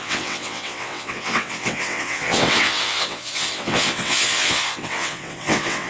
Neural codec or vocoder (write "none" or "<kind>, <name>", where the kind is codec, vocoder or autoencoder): vocoder, WaveNeXt